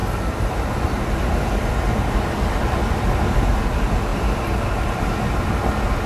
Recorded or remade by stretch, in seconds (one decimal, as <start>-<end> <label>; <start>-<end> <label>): 0.0-6.1 recorded